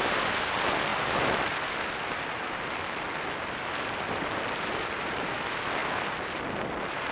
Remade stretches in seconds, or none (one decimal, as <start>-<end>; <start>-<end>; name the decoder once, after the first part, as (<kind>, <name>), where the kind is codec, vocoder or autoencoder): 0.0-5.8 (vocoder, BigVGAN v2); 6.5-7.1